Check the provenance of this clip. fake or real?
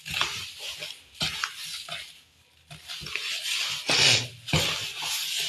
real